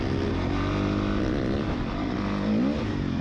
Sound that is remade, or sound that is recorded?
recorded